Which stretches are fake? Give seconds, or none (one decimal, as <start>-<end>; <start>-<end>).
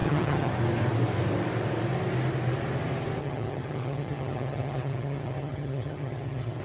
0.0-0.5; 3.2-6.6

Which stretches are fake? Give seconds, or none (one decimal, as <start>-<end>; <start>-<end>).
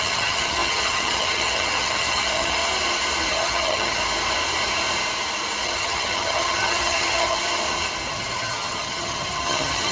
0.0-2.6; 3.3-4.0; 5.6-7.4; 8.1-9.9